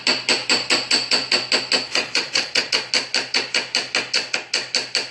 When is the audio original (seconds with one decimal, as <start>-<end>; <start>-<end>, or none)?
0.0-1.9; 2.7-5.1